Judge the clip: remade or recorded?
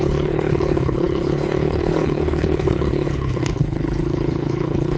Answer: remade